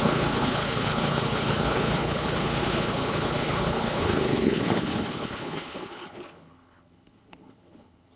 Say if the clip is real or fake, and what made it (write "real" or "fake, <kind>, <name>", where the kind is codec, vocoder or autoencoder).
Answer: fake, codec, HILCodec